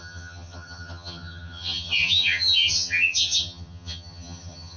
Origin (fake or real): fake